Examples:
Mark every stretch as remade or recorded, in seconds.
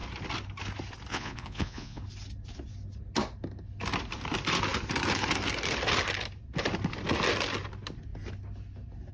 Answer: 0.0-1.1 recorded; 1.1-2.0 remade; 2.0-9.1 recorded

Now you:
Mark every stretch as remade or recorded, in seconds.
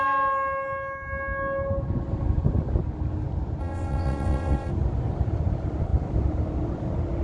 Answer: 0.0-3.6 recorded; 3.6-4.7 remade; 4.7-7.2 recorded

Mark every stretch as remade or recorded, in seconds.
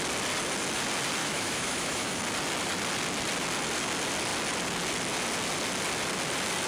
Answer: 0.0-1.2 recorded; 1.2-2.2 remade; 2.2-6.7 recorded